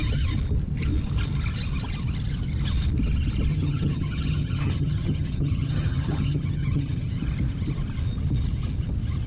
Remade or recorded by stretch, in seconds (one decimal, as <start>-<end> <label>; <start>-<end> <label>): 0.0-3.5 recorded; 3.5-7.1 remade; 7.1-9.3 recorded